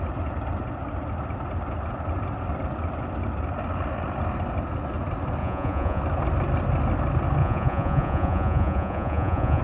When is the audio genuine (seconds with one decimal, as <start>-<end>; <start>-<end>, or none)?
0.0-5.4; 6.0-7.4